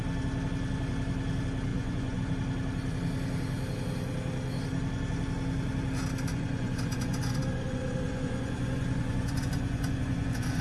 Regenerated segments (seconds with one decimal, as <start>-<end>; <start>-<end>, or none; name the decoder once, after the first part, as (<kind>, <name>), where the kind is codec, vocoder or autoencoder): 1.7-2.2 (vocoder, Vocos); 6.3-10.6